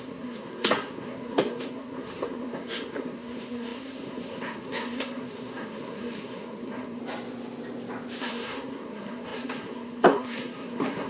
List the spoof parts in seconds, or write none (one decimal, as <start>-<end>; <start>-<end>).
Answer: 0.0-7.0; 8.2-11.1